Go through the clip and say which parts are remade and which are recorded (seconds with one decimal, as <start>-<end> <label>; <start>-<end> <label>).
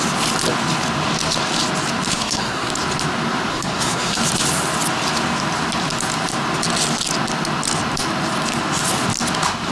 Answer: 0.0-2.1 recorded; 2.1-2.7 remade; 2.7-3.5 recorded; 3.5-4.2 remade; 4.2-9.7 recorded